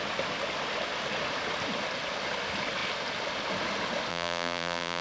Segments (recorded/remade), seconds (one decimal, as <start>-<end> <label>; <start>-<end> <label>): 0.0-4.1 recorded; 4.1-5.0 remade